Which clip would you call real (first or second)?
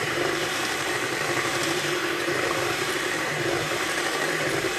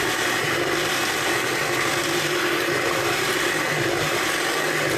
second